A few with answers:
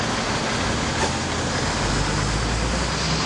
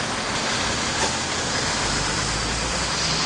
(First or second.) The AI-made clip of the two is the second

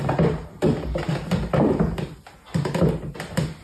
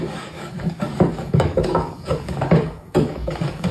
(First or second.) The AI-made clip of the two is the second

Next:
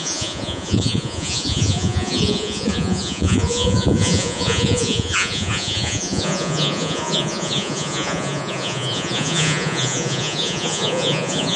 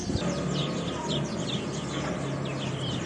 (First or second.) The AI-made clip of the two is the first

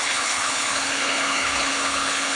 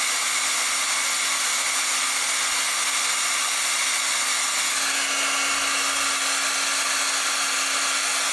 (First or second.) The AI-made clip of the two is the first